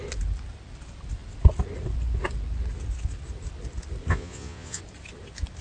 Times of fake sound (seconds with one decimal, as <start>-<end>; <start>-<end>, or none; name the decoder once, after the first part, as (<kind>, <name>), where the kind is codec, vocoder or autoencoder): 4.1-4.8 (vocoder, Vocos)